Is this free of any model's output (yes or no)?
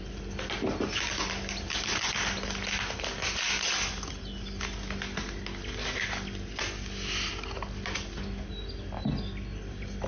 yes